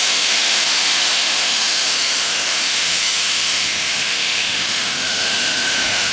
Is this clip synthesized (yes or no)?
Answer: yes